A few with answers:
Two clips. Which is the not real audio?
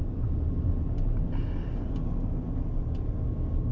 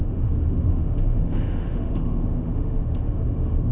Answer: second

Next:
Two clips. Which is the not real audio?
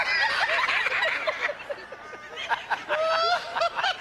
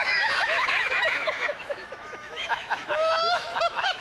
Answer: second